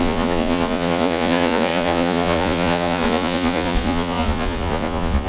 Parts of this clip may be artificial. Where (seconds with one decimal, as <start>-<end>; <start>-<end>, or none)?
0.0-5.3